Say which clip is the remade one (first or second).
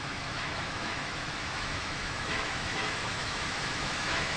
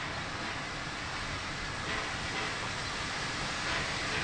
first